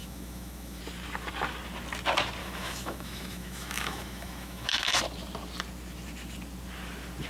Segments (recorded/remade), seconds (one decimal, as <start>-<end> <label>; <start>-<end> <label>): 0.0-0.8 remade; 0.8-2.4 recorded; 2.4-5.0 remade; 5.0-7.3 recorded